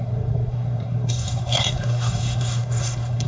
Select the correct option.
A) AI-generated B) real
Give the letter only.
A